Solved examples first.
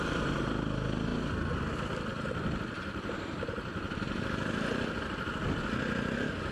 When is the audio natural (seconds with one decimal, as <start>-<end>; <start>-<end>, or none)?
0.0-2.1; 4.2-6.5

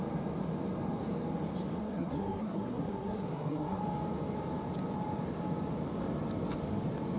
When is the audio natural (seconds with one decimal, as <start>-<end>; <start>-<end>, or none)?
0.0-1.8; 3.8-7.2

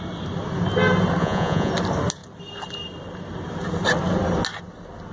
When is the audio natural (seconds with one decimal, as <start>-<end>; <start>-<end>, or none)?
0.0-1.2; 1.7-5.1